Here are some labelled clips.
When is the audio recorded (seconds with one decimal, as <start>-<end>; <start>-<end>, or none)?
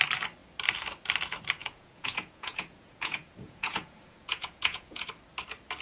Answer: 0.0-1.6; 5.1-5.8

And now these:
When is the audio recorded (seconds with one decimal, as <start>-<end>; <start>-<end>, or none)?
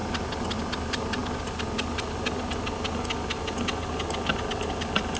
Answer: 0.0-5.2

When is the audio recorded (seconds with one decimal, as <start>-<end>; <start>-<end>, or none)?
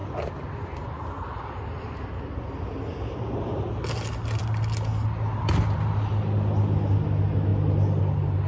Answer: 0.0-8.5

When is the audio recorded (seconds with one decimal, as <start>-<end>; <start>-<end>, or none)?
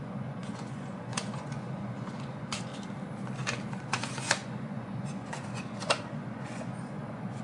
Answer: 2.7-3.8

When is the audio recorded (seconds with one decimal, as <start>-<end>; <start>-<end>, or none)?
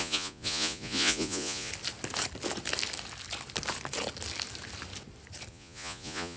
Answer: 1.7-5.5